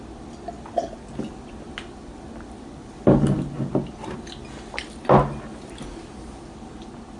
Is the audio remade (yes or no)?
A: no